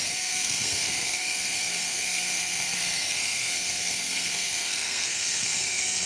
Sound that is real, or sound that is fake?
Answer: fake